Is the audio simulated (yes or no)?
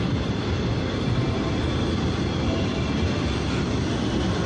no